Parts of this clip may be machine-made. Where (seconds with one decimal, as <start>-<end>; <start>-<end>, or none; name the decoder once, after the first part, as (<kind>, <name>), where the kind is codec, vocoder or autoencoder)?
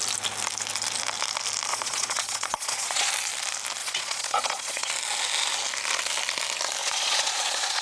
1.7-3.1 (vocoder, Vocos); 3.8-4.9; 6.8-7.8